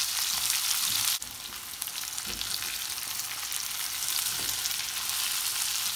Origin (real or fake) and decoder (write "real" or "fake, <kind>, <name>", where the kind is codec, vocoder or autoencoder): real